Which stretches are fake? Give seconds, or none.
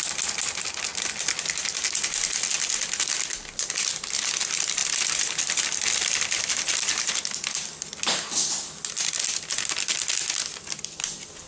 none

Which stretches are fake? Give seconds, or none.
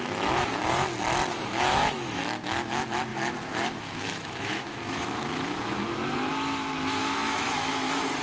0.0-0.6 (autoencoder, DAC-VAE); 1.3-8.2